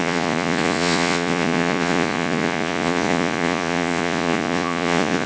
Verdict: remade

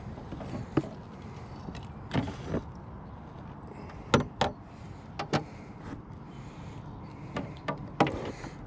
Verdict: recorded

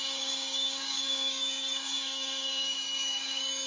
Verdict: remade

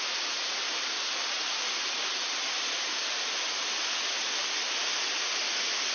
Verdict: recorded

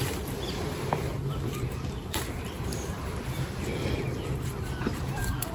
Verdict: remade